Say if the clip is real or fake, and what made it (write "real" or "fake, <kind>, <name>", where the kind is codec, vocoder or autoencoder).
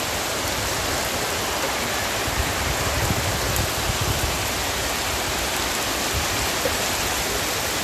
real